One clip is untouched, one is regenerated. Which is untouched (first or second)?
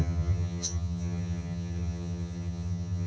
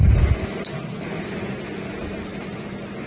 second